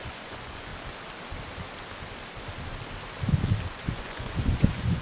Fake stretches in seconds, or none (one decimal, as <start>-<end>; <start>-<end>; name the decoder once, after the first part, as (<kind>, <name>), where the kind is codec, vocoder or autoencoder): 0.0-0.7 (vocoder, Vocos); 3.7-5.0